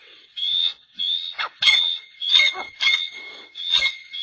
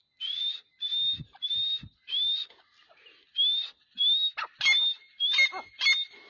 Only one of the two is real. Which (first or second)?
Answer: second